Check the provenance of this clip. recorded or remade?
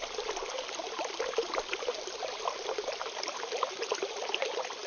recorded